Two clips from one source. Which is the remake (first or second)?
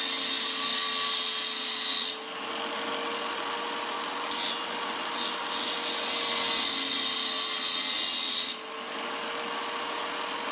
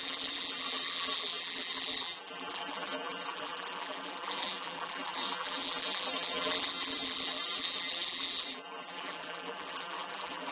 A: second